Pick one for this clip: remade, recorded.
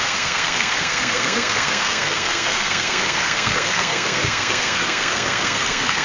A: remade